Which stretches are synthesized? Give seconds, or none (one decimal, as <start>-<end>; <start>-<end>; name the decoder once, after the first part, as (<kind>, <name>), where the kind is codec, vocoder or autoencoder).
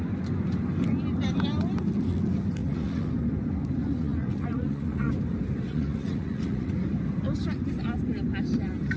2.6-3.1 (vocoder, Vocos); 4.0-5.1; 5.7-6.7